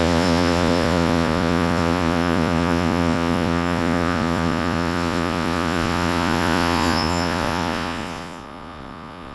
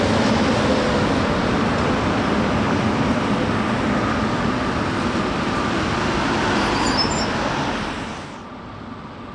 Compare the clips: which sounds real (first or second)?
second